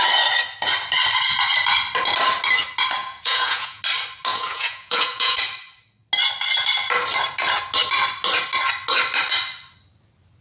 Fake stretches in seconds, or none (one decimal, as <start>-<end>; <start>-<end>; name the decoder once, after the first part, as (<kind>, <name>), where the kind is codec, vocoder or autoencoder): 3.0-3.8 (vocoder, Vocos); 4.3-5.4